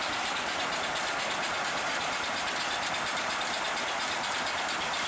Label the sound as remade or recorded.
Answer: recorded